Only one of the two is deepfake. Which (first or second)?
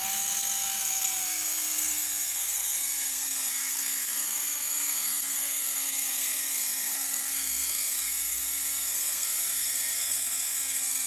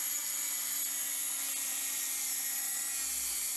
first